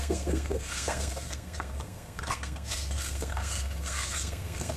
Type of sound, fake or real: fake